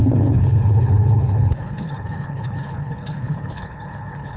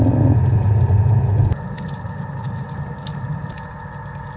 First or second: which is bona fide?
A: second